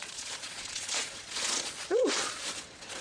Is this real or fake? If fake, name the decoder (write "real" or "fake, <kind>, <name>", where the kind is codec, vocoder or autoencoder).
fake, vocoder, Vocos